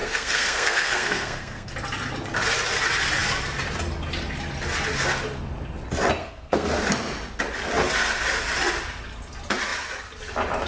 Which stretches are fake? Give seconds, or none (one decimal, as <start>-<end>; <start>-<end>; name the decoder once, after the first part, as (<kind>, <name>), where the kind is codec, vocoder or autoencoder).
0.0-1.7 (codec, SNAC); 6.2-6.7